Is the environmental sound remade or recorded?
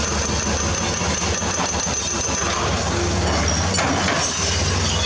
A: recorded